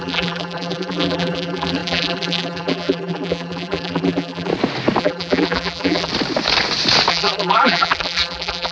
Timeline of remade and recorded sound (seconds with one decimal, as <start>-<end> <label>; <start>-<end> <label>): 0.0-4.5 remade; 4.5-5.0 recorded; 5.0-6.1 remade; 6.1-7.1 recorded; 7.1-8.7 remade